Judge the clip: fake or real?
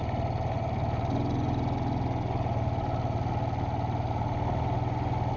real